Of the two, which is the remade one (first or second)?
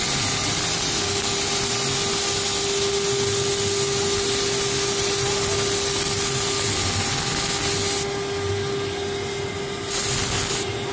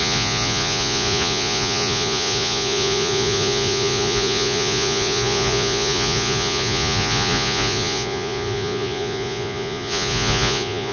second